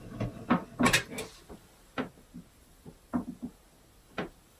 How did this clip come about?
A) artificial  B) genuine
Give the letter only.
B